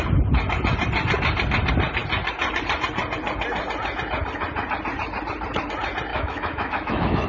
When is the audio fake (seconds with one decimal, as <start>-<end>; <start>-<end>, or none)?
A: 6.1-7.3